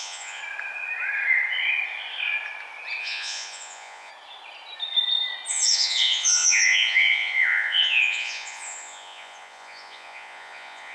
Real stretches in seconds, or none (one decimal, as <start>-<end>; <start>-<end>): 0.4-3.0; 4.1-5.5